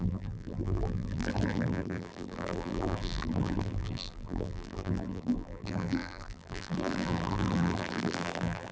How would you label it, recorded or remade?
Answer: remade